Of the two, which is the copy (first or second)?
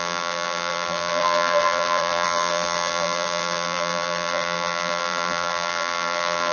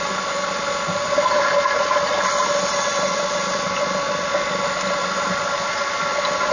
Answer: first